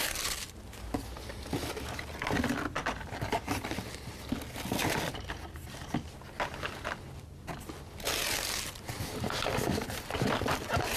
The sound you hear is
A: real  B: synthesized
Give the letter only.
A